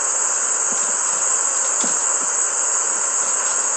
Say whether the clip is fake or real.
real